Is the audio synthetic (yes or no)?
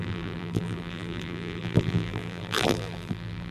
yes